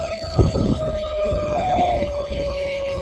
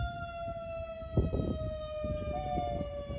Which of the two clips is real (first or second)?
second